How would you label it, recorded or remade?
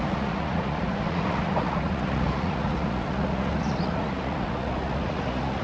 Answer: remade